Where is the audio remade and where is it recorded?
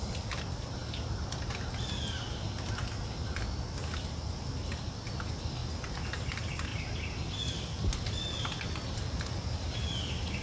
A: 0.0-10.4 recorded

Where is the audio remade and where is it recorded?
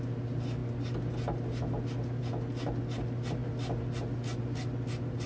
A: 0.0-5.3 recorded